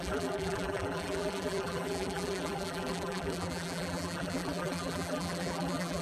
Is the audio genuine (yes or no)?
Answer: no